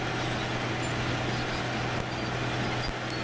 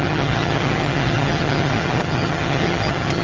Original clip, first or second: first